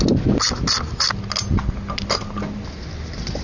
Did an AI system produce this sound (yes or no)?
no